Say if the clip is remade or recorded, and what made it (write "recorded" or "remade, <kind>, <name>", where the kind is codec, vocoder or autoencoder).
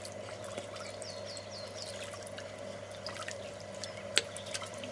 recorded